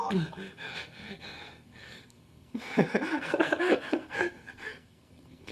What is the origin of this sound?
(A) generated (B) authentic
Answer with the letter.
A